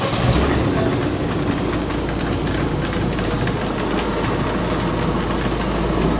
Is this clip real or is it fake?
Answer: real